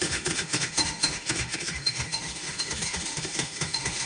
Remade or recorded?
remade